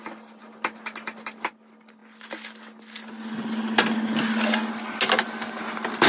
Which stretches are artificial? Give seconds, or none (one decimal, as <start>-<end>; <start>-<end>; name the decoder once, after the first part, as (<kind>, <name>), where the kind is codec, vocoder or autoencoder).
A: none